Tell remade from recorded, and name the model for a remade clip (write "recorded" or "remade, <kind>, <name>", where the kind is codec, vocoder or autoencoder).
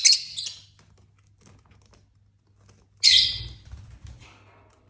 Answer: recorded